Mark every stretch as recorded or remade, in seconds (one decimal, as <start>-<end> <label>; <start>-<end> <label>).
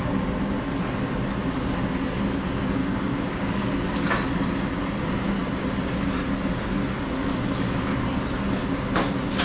0.0-2.8 recorded; 2.8-3.7 remade; 3.7-9.4 recorded